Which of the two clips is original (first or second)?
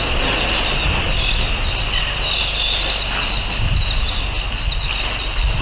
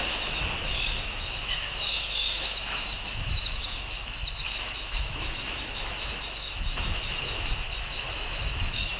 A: first